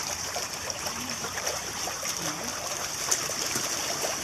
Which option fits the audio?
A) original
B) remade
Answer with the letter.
B